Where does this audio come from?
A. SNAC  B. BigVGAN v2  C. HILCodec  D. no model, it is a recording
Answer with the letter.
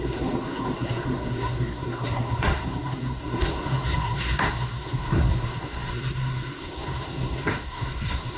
A